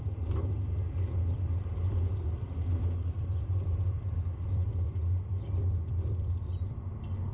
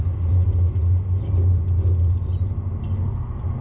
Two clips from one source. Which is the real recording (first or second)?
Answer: second